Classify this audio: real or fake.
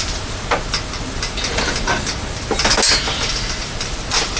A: real